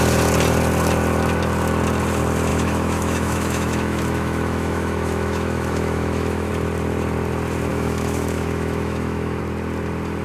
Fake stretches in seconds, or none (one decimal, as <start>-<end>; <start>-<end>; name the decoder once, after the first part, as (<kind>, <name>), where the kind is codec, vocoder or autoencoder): 2.5-6.5 (autoencoder, DAC-VAE); 7.7-9.4